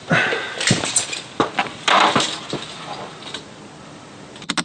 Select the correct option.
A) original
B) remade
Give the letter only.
A